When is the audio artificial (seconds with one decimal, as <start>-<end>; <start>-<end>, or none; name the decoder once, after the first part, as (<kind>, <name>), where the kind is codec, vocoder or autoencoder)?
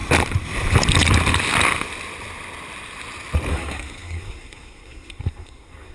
3.5-5.9 (codec, SNAC)